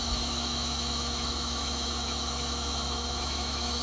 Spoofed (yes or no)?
yes